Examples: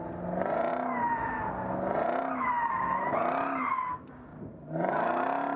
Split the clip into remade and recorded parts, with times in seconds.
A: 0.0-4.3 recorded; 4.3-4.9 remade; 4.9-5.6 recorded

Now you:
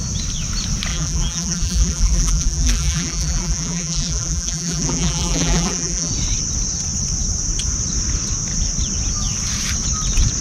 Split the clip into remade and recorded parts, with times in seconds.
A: 0.0-0.9 recorded; 0.9-6.1 remade; 6.1-10.4 recorded

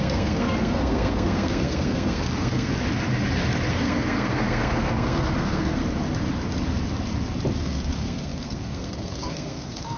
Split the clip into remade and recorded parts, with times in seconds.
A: 0.0-2.7 remade; 2.7-3.7 recorded; 3.7-5.8 remade; 5.8-7.6 recorded; 7.6-10.0 remade